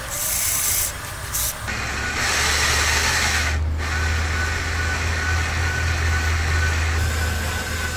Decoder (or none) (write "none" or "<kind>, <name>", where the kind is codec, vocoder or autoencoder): none